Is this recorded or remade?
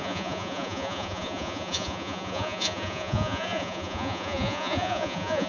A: remade